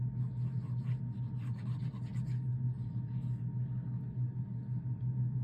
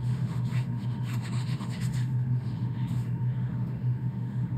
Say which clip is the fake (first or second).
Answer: second